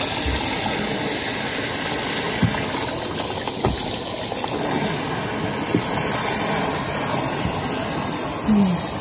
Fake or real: real